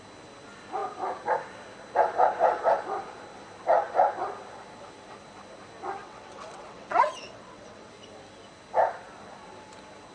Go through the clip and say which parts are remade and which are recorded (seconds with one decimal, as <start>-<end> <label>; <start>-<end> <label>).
0.0-6.0 recorded; 6.0-7.9 remade; 7.9-10.1 recorded